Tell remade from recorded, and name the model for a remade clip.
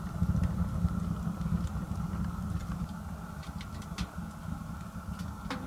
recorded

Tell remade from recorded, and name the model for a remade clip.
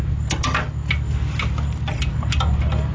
recorded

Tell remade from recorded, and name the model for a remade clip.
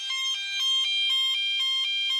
recorded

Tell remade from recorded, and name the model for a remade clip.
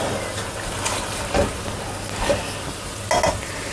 recorded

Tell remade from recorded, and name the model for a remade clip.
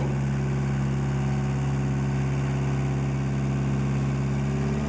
recorded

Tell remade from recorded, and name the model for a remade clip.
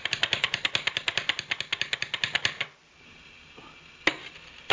recorded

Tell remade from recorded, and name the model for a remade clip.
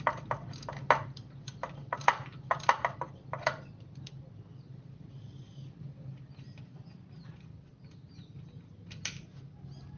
recorded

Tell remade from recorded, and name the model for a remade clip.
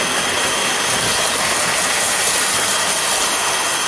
recorded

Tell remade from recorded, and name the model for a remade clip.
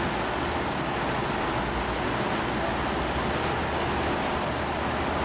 recorded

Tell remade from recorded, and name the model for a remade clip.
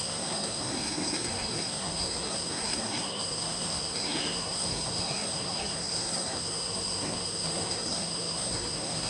remade, codec, SNAC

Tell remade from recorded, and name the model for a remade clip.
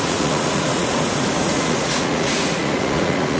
remade, vocoder, Vocos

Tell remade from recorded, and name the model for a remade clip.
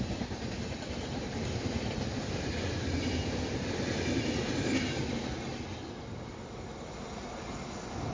recorded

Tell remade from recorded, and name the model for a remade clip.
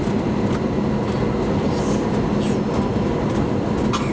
recorded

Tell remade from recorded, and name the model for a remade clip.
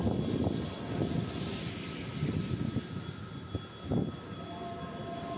recorded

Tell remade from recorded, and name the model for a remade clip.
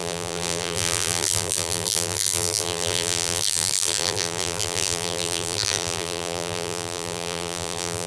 remade, vocoder, BigVGAN v2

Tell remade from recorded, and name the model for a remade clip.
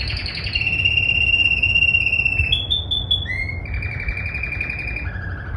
recorded